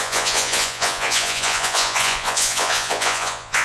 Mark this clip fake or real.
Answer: fake